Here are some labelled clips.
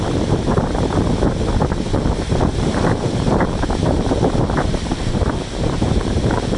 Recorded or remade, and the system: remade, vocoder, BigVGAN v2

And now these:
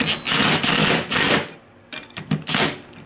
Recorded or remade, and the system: recorded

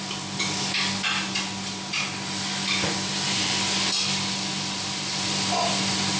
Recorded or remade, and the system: recorded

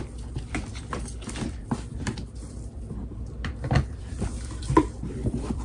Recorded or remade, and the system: remade, vocoder, BigVGAN v2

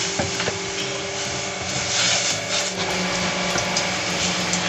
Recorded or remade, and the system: recorded